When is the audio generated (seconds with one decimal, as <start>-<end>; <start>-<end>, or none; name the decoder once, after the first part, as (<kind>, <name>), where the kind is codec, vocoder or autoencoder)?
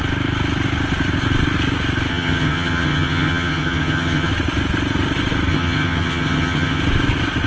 2.1-4.3 (vocoder, HiFi-GAN); 5.5-6.8